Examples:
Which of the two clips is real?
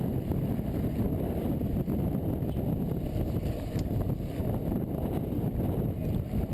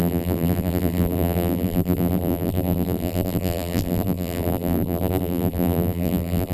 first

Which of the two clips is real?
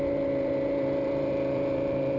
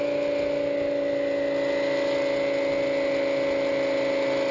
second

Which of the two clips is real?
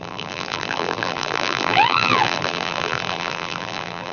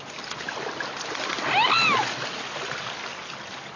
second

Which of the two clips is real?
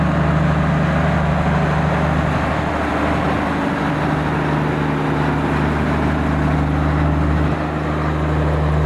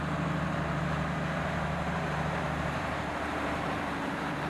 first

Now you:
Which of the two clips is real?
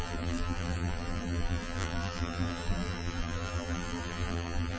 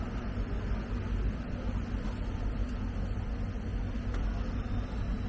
second